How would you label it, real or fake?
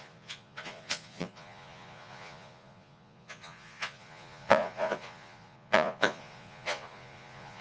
fake